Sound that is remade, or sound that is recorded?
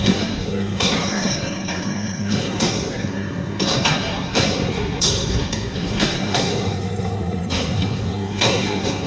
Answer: remade